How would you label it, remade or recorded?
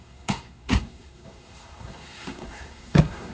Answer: remade